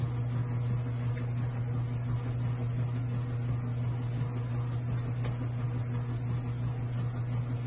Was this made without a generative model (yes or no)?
yes